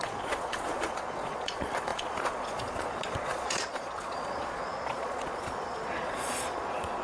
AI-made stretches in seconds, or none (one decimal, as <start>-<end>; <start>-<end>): 0.0-7.0